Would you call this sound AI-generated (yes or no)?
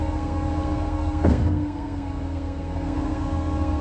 yes